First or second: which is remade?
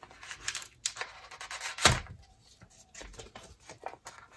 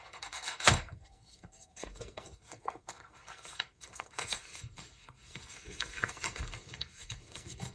second